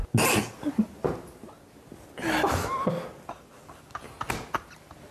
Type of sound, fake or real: real